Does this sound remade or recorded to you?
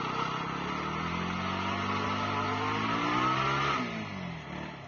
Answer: recorded